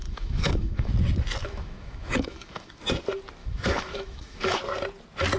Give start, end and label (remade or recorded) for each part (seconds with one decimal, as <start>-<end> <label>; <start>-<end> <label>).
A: 0.0-0.9 remade; 0.9-1.4 recorded; 1.4-2.8 remade; 2.8-3.4 recorded; 3.4-4.6 remade; 4.6-5.4 recorded